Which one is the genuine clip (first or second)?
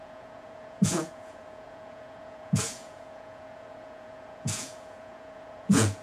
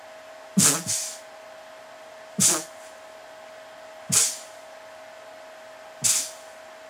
second